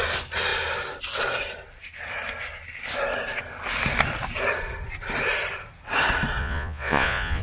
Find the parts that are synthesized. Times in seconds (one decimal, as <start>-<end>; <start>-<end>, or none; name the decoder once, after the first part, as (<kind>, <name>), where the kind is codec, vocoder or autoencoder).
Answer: 6.4-7.4 (vocoder, Vocos)